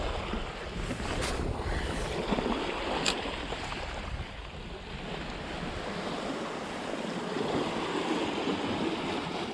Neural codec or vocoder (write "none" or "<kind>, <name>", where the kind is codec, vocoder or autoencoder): none